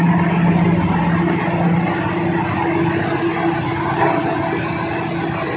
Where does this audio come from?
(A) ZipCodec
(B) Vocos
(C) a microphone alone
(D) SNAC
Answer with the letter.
C